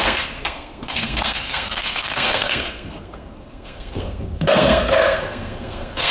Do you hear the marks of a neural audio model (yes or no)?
yes